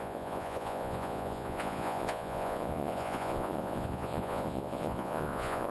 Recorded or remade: remade